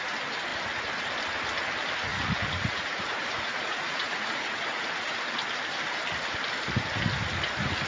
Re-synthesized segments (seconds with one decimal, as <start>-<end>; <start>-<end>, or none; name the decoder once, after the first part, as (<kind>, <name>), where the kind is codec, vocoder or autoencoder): 2.1-5.1 (vocoder, Vocos)